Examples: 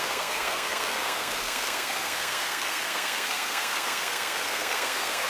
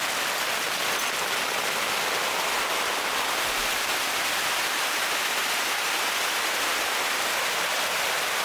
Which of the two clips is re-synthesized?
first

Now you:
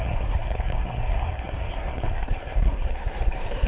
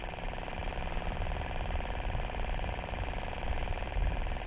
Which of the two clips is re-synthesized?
first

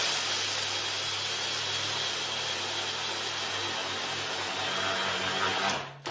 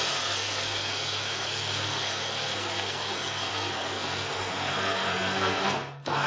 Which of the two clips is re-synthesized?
second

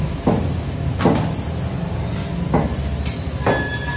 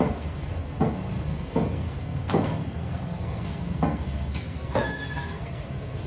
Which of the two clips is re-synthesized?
second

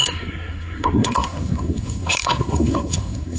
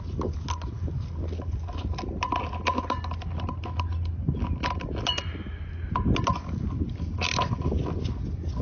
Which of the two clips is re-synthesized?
first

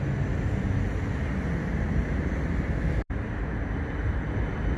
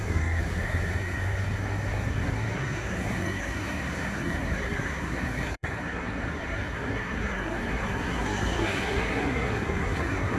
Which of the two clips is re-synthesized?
second